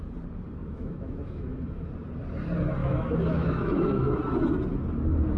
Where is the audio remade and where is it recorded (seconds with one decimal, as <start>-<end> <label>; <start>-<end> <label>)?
0.0-0.6 recorded; 0.6-1.9 remade; 1.9-2.8 recorded; 2.8-4.2 remade; 4.2-5.4 recorded